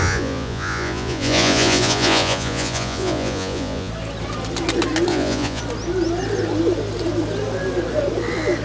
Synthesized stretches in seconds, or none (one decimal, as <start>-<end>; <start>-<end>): 0.0-3.9; 5.1-5.6